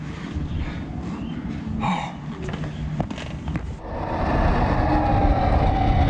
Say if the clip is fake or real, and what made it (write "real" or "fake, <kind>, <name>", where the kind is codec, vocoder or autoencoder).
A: real